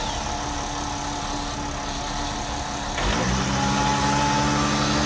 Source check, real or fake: real